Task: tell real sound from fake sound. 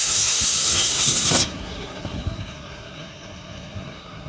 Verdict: fake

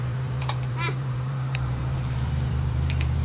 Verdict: fake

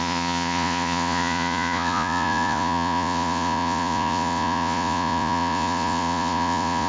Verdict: fake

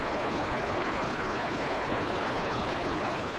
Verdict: fake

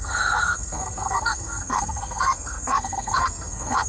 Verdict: fake